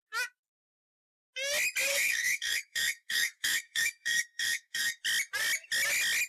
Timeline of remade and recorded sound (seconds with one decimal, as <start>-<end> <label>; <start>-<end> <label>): 0.0-1.9 recorded; 1.9-5.0 remade; 5.0-6.3 recorded